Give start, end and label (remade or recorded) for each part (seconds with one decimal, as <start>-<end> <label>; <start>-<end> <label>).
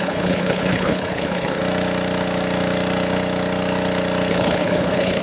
0.0-1.6 remade; 1.6-4.3 recorded; 4.3-5.2 remade